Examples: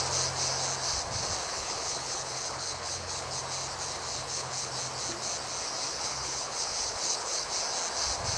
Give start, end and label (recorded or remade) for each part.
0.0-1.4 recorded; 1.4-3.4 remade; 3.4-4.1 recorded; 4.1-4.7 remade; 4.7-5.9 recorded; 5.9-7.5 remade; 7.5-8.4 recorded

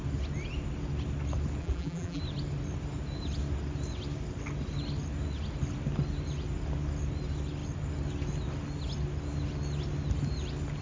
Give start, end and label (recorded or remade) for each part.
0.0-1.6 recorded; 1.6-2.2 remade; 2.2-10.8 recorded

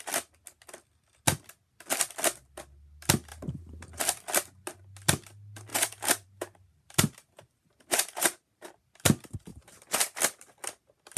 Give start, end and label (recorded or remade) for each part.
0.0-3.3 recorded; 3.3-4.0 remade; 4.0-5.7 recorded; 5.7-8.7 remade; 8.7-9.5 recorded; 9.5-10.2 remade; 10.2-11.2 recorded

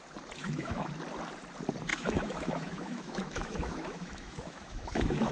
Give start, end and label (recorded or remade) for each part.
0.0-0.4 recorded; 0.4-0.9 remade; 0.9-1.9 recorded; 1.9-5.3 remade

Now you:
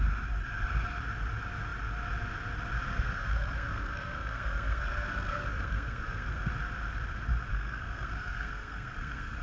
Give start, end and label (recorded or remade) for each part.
0.0-2.9 recorded; 2.9-6.5 remade; 6.5-7.5 recorded; 7.5-9.4 remade

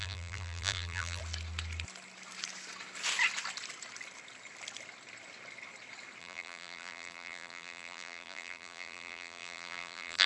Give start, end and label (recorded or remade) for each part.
0.0-1.2 remade; 1.2-6.2 recorded; 6.2-10.3 remade

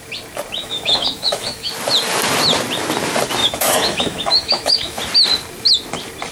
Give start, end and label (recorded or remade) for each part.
0.0-0.6 recorded; 0.6-1.7 remade; 1.7-3.4 recorded; 3.4-5.0 remade; 5.0-6.3 recorded